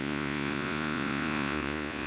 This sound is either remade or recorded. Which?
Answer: remade